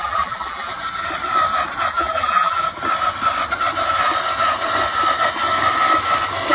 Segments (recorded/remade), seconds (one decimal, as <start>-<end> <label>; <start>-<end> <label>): 0.0-0.7 remade; 0.7-1.9 recorded; 1.9-2.6 remade; 2.6-6.5 recorded